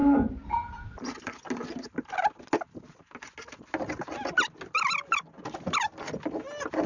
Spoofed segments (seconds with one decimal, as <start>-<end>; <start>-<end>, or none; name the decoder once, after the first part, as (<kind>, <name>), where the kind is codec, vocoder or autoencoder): none